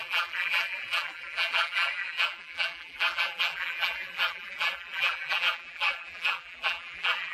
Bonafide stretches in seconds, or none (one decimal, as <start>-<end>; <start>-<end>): none